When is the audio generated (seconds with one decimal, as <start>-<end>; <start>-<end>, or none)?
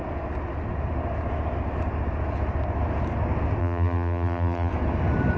3.6-4.7